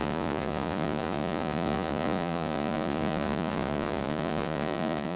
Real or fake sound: fake